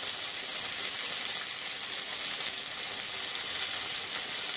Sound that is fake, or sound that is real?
real